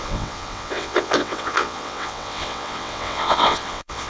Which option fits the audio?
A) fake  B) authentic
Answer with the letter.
A